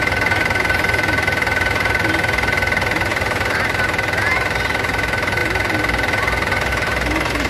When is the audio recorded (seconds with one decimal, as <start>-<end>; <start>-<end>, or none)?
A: 0.0-7.5